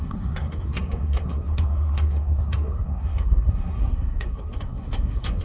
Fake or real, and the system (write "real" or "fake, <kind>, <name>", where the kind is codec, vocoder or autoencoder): fake, codec, SNAC